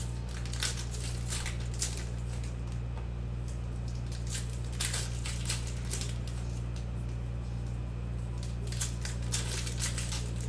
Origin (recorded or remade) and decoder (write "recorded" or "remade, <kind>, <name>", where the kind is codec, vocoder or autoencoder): recorded